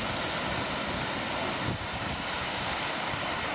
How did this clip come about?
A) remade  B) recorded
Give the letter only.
B